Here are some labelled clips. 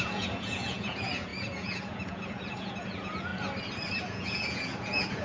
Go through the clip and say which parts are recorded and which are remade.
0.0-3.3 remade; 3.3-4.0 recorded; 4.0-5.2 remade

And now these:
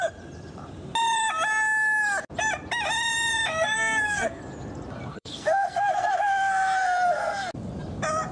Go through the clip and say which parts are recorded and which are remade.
0.0-3.5 recorded; 3.5-4.4 remade; 4.4-5.1 recorded; 5.1-7.5 remade; 7.5-8.3 recorded

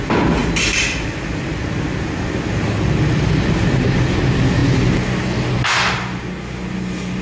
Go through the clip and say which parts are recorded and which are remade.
0.0-7.2 recorded